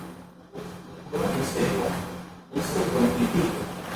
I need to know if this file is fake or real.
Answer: real